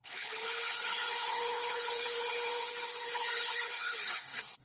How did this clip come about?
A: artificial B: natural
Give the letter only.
A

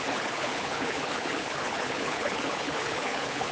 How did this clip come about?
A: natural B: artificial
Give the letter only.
B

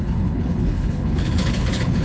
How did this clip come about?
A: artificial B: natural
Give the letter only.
A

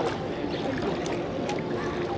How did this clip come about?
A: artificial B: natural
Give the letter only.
B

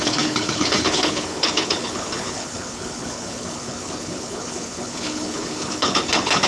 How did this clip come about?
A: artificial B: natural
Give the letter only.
A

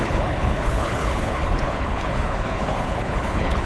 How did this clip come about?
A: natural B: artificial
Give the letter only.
B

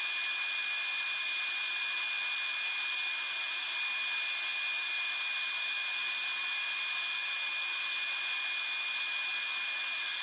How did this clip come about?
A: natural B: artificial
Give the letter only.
A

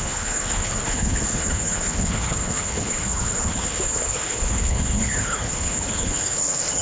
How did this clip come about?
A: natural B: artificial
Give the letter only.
B